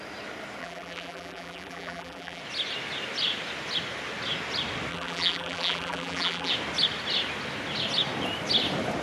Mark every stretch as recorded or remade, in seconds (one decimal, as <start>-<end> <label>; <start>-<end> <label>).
0.0-0.6 recorded; 0.6-2.4 remade; 2.4-4.9 recorded; 4.9-6.5 remade; 6.5-9.0 recorded